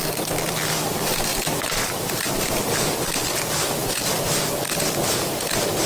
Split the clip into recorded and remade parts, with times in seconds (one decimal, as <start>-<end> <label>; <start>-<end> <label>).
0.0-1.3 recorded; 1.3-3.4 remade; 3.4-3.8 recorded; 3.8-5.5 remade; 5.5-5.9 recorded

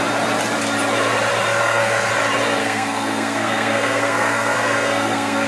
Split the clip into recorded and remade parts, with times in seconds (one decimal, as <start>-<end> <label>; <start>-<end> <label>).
0.0-1.6 recorded; 1.6-2.1 remade; 2.1-2.6 recorded; 2.6-5.5 remade

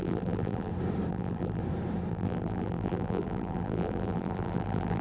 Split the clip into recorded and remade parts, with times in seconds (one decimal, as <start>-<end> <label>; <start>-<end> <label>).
0.0-0.7 remade; 0.7-1.1 recorded; 1.1-1.6 remade; 1.6-2.1 recorded; 2.1-5.0 remade

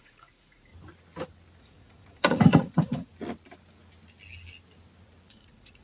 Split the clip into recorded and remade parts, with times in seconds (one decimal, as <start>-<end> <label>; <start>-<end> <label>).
0.0-0.7 remade; 0.7-1.6 recorded; 1.6-3.1 remade; 3.1-5.3 recorded; 5.3-5.8 remade

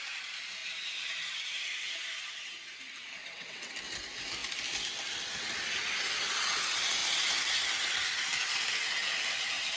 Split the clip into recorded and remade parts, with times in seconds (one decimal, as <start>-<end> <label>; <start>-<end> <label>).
0.0-3.2 recorded; 3.2-3.7 remade; 3.7-9.8 recorded